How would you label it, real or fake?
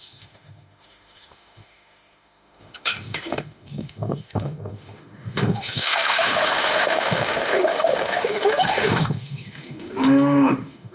fake